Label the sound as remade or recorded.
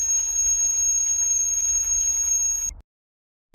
recorded